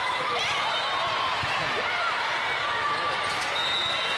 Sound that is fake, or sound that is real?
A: real